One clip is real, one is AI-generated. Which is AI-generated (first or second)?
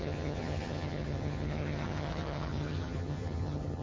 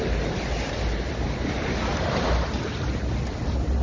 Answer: first